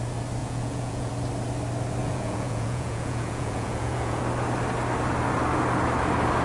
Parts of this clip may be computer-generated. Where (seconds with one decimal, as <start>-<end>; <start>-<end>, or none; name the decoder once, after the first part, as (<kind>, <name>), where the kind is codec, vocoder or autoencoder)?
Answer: 0.4-1.1 (vocoder, Vocos); 2.0-4.2